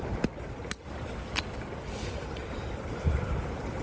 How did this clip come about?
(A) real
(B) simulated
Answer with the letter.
B